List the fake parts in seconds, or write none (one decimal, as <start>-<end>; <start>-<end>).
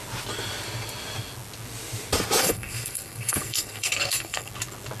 2.4-4.5